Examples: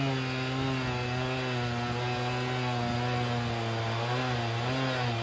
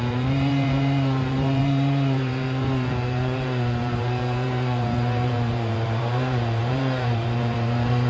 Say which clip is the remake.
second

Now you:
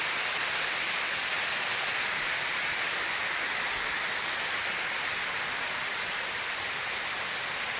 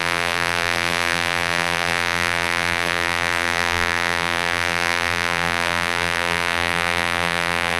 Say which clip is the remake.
second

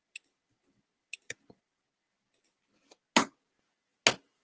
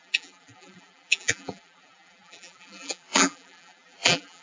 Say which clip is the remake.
second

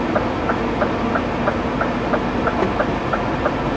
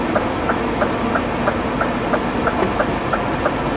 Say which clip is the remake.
second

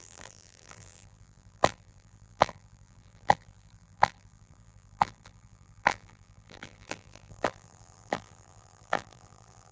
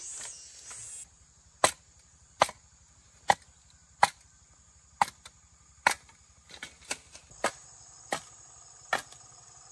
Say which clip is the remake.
first